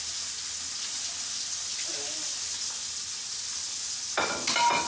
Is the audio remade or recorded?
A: recorded